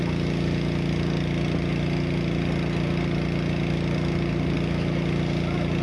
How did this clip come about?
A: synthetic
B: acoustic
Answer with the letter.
B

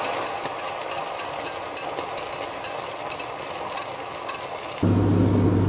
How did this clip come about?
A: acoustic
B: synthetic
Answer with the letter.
A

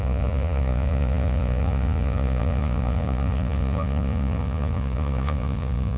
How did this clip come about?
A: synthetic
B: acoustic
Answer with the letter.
A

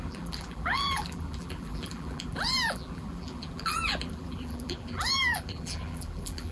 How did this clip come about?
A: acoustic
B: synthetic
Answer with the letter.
B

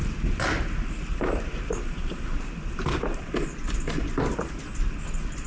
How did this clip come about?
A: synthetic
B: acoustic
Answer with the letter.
B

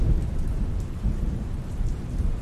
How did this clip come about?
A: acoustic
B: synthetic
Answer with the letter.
B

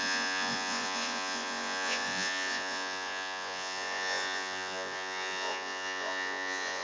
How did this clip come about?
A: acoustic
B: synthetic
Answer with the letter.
B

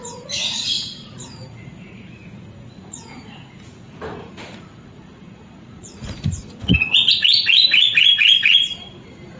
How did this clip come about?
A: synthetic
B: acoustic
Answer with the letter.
A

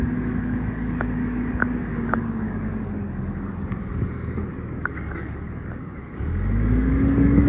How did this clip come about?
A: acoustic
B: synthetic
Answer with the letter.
B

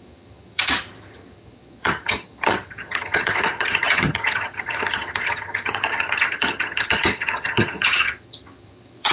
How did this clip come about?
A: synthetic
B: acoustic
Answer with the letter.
A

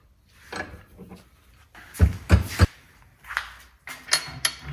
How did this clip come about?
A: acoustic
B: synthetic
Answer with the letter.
A